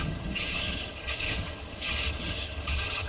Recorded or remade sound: remade